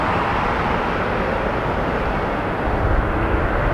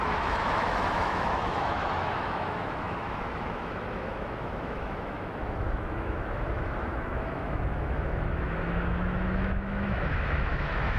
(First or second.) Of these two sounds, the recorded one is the first